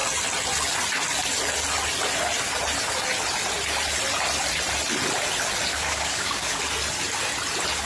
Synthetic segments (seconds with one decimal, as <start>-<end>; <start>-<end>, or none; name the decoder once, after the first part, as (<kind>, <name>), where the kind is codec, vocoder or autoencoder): 5.7-6.6 (codec, DAC)